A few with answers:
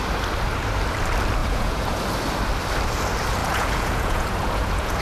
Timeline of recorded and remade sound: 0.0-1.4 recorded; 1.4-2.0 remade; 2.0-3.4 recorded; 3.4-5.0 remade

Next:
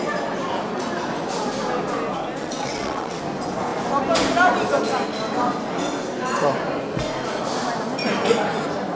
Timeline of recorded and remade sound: 0.0-2.4 recorded; 2.4-3.2 remade; 3.2-9.0 recorded